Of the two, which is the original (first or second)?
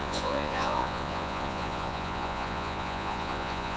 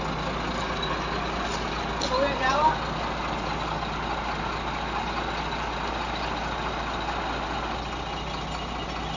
second